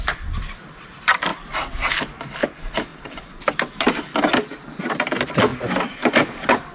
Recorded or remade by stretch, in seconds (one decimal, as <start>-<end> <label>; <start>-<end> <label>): 0.0-5.5 remade; 5.5-6.1 recorded; 6.1-6.7 remade